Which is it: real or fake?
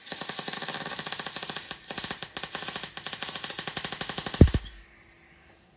real